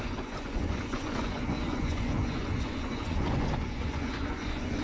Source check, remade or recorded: remade